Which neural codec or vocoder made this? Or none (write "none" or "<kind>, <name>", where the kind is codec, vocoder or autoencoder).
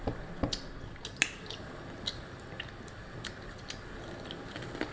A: none